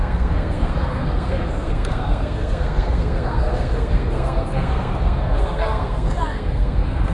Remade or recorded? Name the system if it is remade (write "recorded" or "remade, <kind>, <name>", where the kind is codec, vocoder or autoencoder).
remade, codec, SNAC